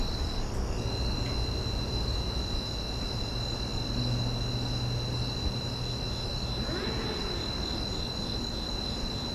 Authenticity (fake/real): real